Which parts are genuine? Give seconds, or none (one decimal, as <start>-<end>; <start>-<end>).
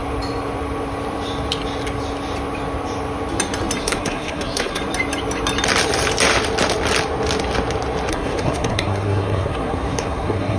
0.0-3.8; 4.8-8.1